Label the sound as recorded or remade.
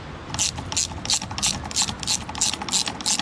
recorded